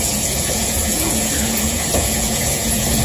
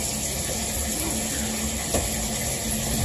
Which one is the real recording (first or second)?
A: second